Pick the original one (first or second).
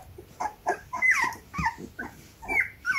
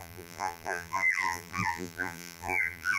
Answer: first